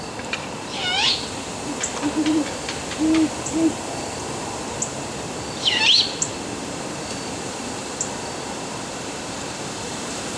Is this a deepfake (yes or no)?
yes